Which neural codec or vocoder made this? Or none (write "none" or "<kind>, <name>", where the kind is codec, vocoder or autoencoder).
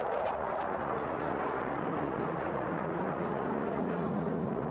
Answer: vocoder, Vocos